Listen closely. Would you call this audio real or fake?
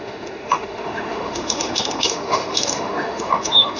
fake